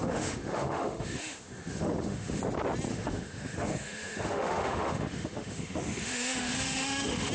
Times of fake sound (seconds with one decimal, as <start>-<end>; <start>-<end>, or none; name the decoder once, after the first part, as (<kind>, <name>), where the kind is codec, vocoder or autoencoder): 0.0-2.4 (autoencoder, DAC-VAE); 2.9-7.3